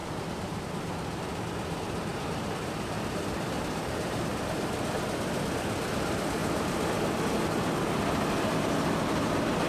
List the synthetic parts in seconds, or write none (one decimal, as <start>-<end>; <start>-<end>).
0.0-0.6; 2.1-4.5; 6.4-7.2